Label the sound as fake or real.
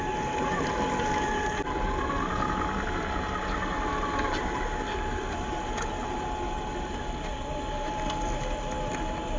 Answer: real